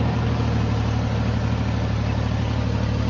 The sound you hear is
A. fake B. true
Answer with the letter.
B